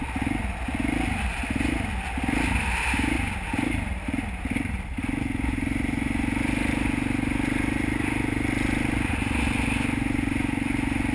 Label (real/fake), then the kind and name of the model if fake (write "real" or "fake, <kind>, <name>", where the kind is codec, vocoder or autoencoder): real